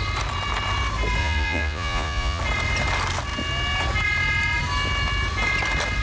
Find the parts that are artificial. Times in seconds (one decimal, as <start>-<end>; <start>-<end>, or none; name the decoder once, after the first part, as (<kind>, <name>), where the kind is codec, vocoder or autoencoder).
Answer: 1.2-2.4 (vocoder, Vocos)